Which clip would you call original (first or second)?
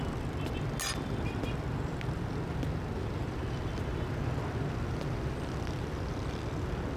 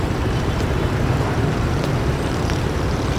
first